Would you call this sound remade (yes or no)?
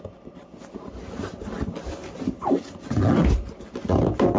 no